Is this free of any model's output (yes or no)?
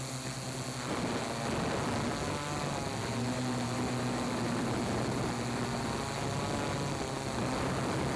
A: yes